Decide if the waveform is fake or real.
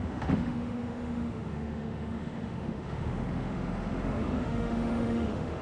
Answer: fake